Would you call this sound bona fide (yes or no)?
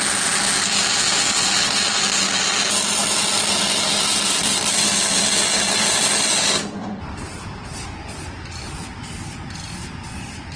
yes